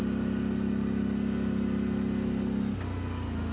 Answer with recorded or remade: recorded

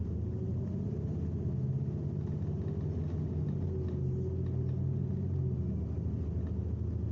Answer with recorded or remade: recorded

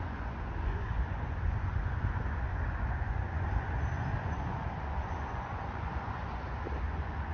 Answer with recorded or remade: remade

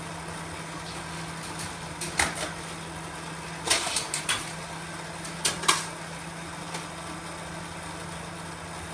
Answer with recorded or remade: recorded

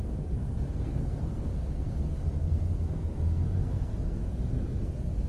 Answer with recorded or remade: remade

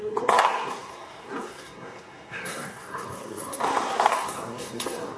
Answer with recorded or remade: remade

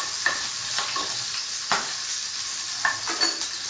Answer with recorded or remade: recorded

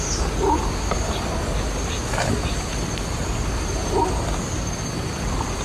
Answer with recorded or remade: recorded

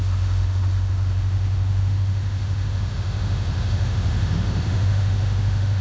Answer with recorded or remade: remade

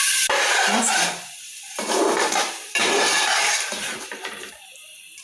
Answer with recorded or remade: remade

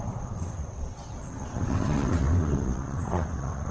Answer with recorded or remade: remade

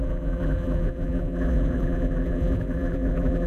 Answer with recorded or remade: remade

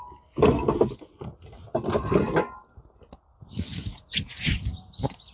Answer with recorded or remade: recorded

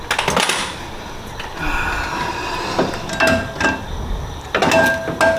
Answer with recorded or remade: recorded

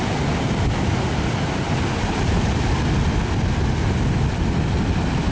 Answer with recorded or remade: recorded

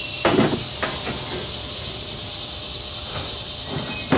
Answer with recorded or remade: recorded